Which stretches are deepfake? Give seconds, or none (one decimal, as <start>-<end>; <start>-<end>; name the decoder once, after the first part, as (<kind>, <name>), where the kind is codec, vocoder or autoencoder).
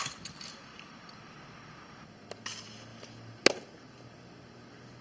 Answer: none